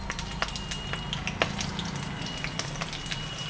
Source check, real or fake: real